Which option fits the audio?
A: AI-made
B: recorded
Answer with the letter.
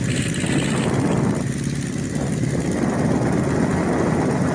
B